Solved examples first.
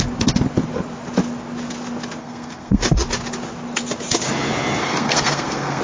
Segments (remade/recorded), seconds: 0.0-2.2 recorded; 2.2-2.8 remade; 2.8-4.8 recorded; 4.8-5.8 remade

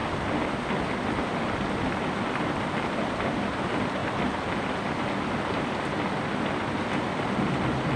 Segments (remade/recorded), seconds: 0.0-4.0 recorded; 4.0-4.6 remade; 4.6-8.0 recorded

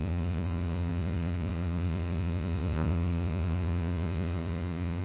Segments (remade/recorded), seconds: 0.0-5.0 remade

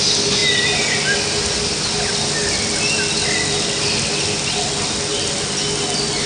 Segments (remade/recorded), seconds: 0.0-6.3 recorded